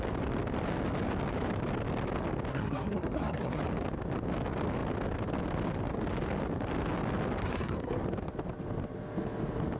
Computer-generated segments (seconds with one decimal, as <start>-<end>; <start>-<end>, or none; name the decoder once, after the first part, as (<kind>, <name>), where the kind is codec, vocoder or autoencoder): 2.5-3.6 (codec, SNAC); 7.4-8.0